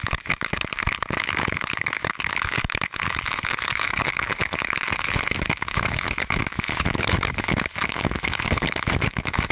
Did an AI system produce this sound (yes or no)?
yes